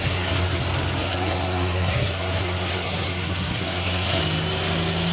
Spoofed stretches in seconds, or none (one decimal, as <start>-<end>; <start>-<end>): 0.0-0.6; 1.1-4.2